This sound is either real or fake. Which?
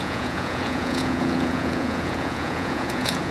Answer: fake